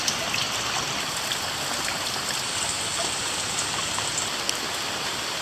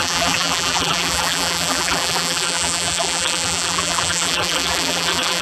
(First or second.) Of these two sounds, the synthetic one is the second